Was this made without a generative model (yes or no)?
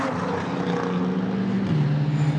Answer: yes